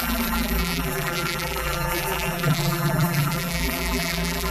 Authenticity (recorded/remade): remade